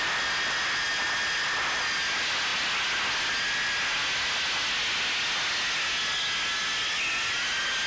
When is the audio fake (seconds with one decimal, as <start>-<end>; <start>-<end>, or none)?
none